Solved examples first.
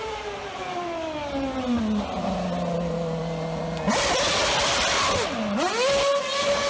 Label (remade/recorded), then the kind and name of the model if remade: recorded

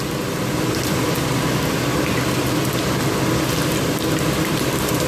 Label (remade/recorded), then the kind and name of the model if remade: recorded